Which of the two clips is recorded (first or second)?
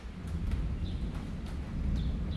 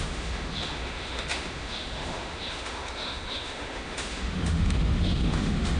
first